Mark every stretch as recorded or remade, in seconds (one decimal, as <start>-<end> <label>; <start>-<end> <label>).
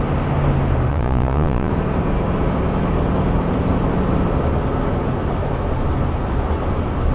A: 0.0-0.9 recorded; 0.9-1.7 remade; 1.7-7.1 recorded